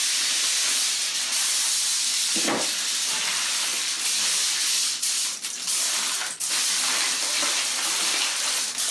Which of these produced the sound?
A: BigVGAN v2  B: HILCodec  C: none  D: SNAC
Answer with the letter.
C